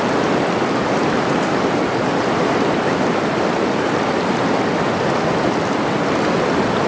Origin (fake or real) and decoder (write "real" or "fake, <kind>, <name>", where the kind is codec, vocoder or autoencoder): real